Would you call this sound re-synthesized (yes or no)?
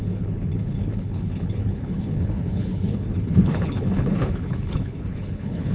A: yes